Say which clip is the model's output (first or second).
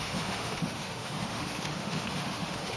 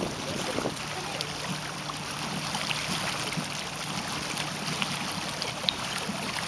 first